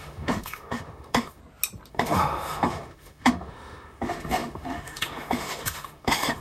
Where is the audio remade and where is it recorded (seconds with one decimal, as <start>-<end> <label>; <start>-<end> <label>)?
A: 0.0-1.4 remade; 1.4-1.9 recorded; 1.9-6.4 remade